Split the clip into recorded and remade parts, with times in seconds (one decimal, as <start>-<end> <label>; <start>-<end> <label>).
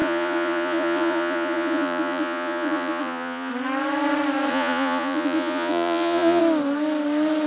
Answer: 0.0-3.5 remade; 3.5-4.5 recorded; 4.5-6.4 remade; 6.4-7.5 recorded